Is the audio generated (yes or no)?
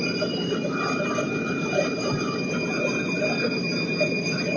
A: no